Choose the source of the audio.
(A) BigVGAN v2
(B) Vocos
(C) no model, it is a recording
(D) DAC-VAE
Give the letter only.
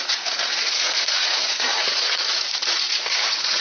B